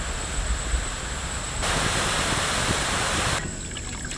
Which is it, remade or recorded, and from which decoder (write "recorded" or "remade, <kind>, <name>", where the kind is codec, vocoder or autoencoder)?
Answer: recorded